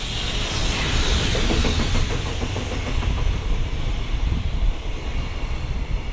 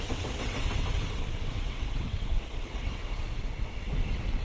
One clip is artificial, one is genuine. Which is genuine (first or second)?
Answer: first